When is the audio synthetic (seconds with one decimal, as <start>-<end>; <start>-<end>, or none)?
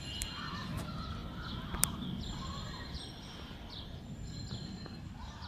1.2-4.5